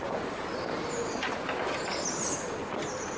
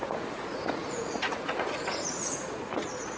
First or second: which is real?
first